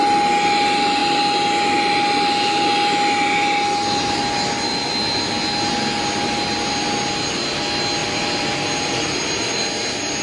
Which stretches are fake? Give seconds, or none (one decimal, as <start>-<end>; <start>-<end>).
8.0-9.7

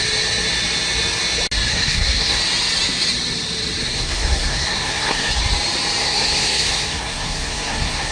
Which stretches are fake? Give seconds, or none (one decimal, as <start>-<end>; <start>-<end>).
1.7-2.4; 3.8-5.4; 6.0-8.1

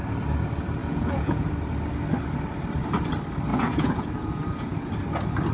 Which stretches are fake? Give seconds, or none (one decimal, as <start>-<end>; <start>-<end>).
0.8-1.5; 3.5-4.9

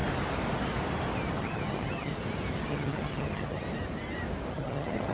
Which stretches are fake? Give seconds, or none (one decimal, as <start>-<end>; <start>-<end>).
1.4-2.1; 2.6-3.6; 4.5-5.1

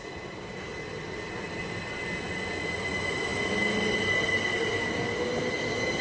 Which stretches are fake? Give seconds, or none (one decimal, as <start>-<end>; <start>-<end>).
none

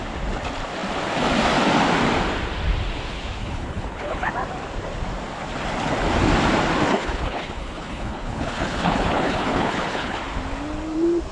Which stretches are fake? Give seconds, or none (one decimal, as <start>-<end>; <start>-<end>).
3.4-4.3; 6.9-10.2

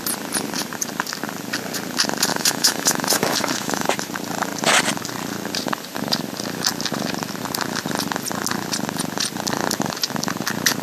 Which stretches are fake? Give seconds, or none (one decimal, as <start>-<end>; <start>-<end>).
2.3-3.9

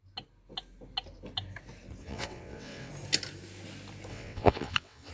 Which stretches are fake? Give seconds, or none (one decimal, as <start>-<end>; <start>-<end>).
2.0-2.9; 4.1-5.1